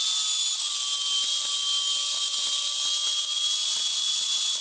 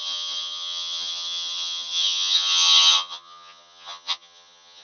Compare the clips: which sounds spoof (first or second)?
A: second